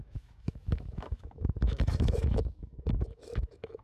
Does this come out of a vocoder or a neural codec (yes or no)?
yes